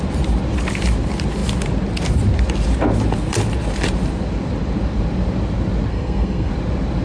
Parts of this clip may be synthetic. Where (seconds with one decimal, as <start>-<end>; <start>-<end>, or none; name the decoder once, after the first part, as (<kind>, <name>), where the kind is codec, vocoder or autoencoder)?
5.9-6.5 (codec, SNAC)